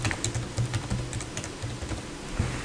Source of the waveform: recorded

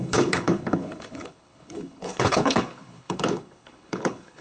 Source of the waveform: remade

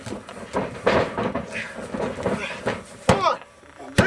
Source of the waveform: recorded